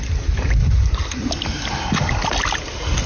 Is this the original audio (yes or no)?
yes